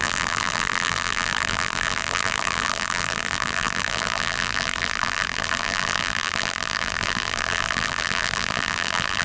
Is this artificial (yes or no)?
yes